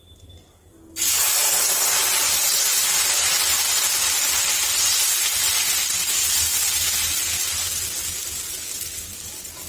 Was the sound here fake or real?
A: real